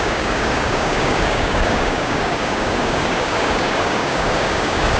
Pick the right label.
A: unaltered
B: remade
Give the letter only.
B